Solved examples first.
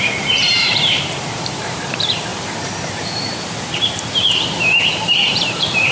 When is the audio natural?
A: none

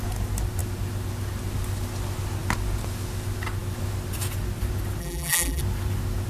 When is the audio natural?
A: 0.0-5.0; 5.6-6.3